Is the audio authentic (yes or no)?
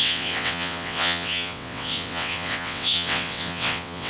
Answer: no